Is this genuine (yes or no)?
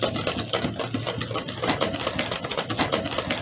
yes